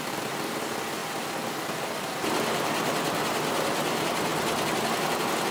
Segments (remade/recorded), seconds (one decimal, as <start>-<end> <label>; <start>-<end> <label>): 0.0-5.5 recorded